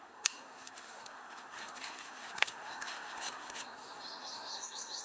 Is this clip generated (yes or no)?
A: yes